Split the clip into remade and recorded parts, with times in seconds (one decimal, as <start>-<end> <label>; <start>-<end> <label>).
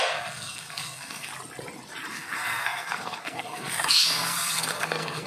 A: 0.0-1.3 remade; 1.3-2.1 recorded; 2.1-5.3 remade